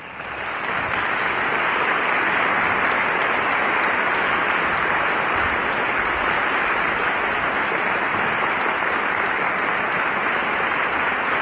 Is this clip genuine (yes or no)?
yes